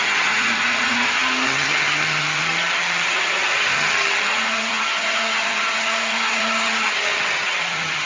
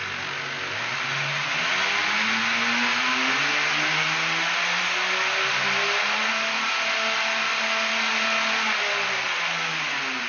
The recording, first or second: second